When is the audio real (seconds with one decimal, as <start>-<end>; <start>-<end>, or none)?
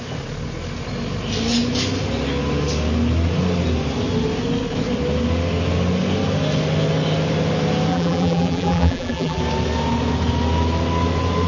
0.0-7.9; 9.4-11.5